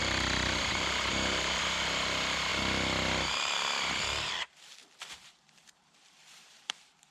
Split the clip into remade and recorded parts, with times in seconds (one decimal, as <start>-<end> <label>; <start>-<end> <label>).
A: 0.0-2.5 remade; 2.5-5.1 recorded; 5.1-7.1 remade